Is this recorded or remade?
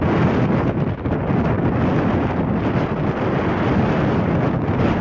recorded